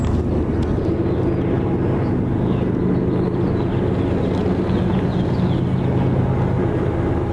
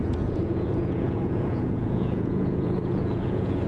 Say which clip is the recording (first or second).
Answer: first